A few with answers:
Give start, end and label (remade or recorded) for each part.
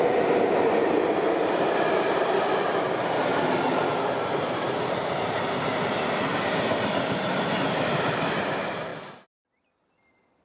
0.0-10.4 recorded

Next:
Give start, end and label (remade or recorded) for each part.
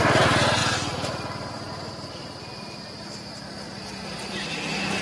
0.0-5.0 recorded